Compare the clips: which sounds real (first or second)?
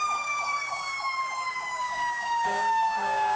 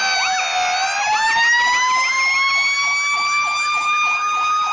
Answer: second